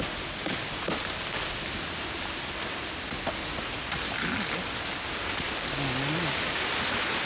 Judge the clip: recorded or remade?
recorded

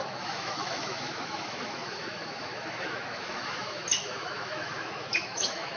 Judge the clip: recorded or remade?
remade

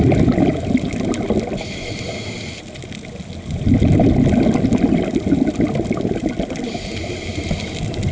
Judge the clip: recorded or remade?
recorded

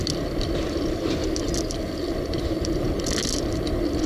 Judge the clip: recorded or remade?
recorded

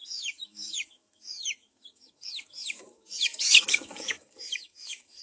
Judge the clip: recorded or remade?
remade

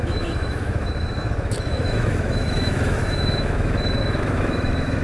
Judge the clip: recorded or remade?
remade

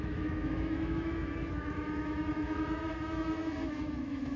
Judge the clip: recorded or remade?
remade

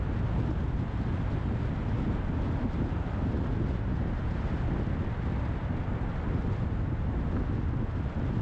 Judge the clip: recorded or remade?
recorded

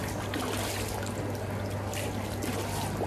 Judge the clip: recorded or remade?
recorded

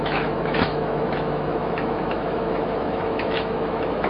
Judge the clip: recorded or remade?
remade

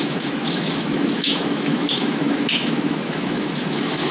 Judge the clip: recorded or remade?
remade